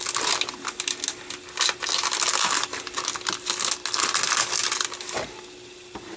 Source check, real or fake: real